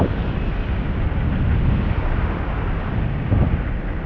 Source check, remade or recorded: recorded